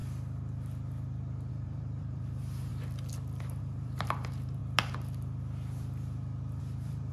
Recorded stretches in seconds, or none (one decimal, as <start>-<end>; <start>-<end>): 0.0-1.5; 2.7-3.6; 4.6-6.6